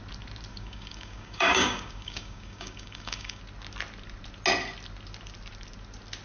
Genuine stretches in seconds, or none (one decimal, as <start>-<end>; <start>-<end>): 0.0-0.5; 3.4-6.2